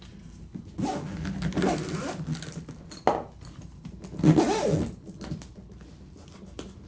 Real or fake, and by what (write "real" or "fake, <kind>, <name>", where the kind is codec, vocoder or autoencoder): real